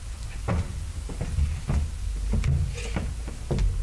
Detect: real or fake real